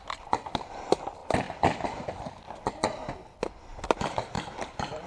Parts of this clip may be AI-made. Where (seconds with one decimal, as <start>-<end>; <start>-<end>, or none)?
1.2-2.7